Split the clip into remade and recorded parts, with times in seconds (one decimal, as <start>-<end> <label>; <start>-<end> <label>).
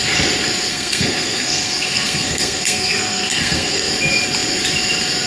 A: 0.0-0.7 recorded; 0.7-3.9 remade; 3.9-5.3 recorded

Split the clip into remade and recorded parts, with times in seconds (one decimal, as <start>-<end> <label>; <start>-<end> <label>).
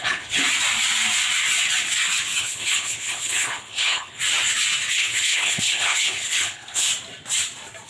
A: 0.0-0.4 remade; 0.4-2.4 recorded; 2.4-4.2 remade; 4.2-4.9 recorded; 4.9-6.9 remade; 6.9-7.9 recorded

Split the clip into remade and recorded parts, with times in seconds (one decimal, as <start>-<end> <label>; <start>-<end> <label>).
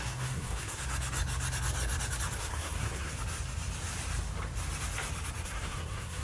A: 0.0-0.8 remade; 0.8-2.4 recorded; 2.4-3.1 remade; 3.1-5.4 recorded; 5.4-6.2 remade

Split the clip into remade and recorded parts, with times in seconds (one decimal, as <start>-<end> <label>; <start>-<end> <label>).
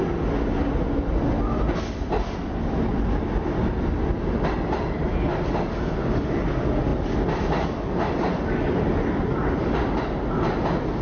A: 0.0-11.0 recorded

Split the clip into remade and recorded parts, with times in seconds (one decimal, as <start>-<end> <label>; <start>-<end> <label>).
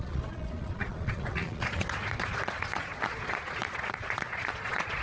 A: 0.0-5.0 remade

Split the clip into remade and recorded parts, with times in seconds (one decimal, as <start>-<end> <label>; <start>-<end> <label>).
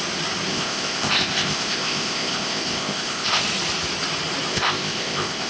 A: 0.0-0.5 recorded; 0.5-3.4 remade; 3.4-4.5 recorded; 4.5-5.5 remade